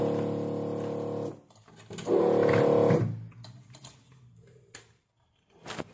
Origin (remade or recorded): recorded